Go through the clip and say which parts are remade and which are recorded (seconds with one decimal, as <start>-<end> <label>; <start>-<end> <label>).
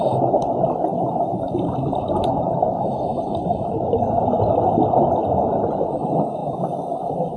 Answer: 0.0-0.9 recorded; 0.9-2.6 remade; 2.6-3.1 recorded; 3.1-3.8 remade; 3.8-7.4 recorded